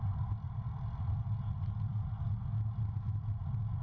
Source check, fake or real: real